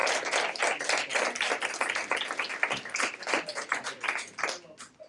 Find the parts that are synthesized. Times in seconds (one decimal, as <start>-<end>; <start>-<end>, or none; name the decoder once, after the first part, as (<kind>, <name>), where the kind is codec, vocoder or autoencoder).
none